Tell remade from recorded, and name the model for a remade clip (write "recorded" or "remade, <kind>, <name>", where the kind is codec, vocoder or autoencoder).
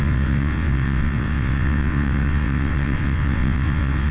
remade, vocoder, WaveNeXt